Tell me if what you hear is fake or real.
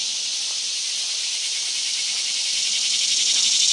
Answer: real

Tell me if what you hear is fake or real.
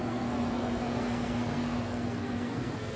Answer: fake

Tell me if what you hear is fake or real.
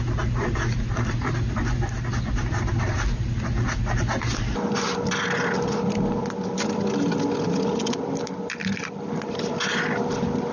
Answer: real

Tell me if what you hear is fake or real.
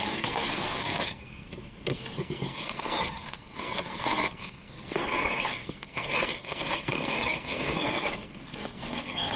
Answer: fake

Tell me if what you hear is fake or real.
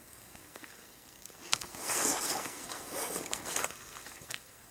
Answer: fake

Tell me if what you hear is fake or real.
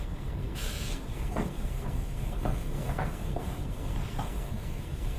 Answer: fake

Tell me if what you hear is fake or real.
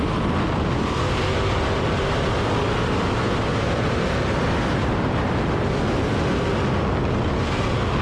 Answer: real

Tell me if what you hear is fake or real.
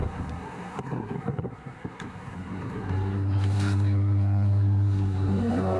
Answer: fake